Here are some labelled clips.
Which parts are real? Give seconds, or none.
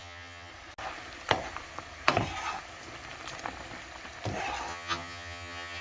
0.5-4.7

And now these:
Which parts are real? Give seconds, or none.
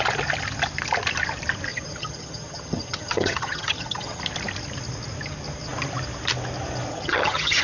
0.0-1.7; 4.2-6.9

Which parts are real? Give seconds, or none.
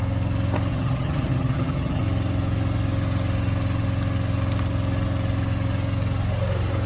0.0-0.7; 2.0-6.9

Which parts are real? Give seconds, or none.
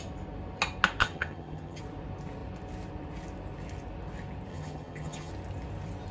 0.0-1.0; 1.8-4.5; 5.3-6.1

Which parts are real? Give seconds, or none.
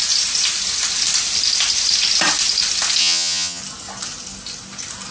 0.0-3.0; 3.6-5.1